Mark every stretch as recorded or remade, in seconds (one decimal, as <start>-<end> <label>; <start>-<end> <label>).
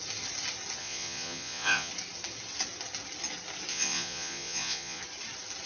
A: 0.0-0.8 recorded; 0.8-1.9 remade; 1.9-3.7 recorded; 3.7-5.0 remade; 5.0-5.7 recorded